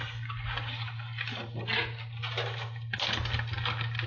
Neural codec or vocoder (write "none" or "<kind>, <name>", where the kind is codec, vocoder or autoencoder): none